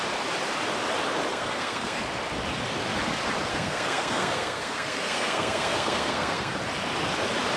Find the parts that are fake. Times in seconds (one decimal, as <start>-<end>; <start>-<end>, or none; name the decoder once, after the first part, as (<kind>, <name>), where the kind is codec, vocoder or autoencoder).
1.3-2.0 (codec, SNAC); 3.5-6.6